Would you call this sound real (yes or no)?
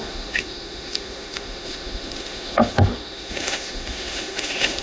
no